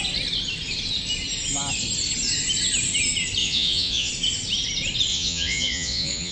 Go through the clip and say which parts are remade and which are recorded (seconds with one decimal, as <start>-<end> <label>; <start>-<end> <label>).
0.0-3.4 recorded; 3.4-4.1 remade; 4.1-5.1 recorded; 5.1-6.3 remade